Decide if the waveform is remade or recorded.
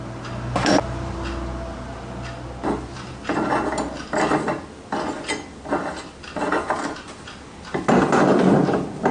recorded